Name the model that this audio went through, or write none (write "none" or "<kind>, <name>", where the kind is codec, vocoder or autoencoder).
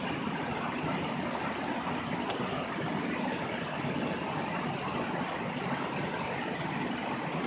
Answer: none